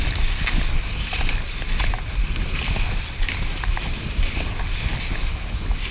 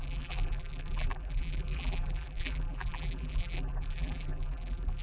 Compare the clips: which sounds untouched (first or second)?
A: first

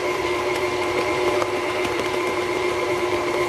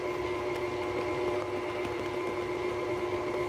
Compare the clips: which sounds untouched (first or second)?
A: second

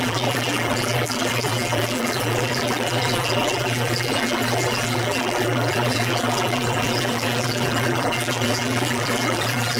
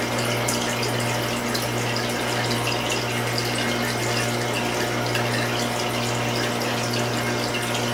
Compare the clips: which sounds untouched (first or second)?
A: second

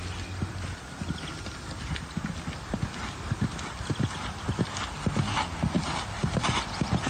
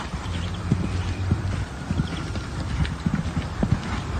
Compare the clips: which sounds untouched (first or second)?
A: first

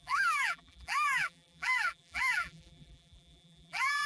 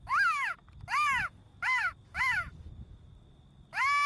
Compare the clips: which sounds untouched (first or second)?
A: second